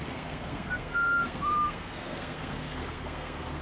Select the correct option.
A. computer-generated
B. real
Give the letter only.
A